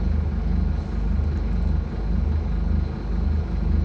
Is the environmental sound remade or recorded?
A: recorded